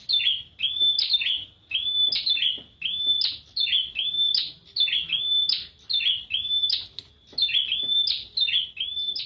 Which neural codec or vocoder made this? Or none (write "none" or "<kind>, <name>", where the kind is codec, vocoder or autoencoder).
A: none